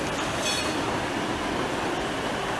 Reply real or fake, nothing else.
real